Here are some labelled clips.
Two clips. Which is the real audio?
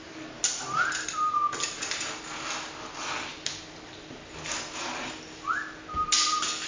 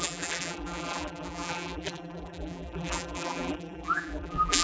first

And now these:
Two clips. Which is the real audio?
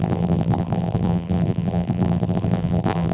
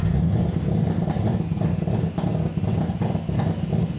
second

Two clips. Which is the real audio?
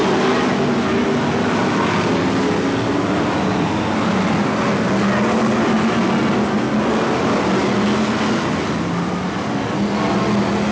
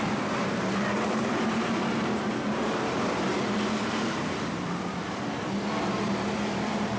first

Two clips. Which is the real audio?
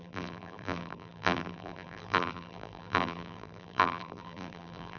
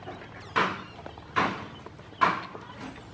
second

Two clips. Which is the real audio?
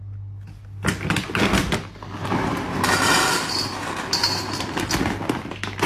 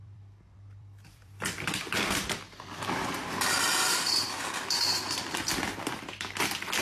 first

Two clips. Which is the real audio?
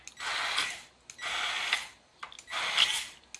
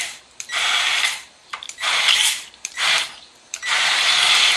first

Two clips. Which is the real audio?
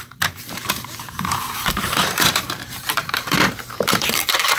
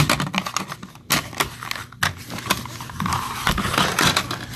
second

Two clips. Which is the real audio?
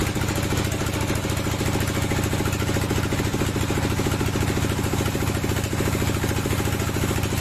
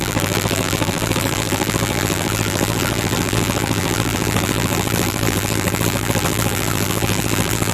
first